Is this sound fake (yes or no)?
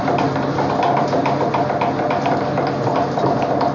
no